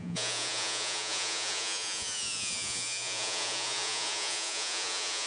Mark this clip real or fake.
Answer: fake